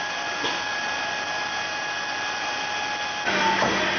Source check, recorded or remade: recorded